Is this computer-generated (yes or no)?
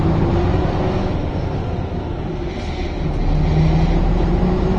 no